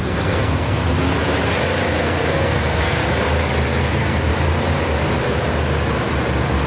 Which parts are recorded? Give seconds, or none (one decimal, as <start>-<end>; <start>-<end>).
0.8-2.0; 3.0-3.8; 4.3-6.7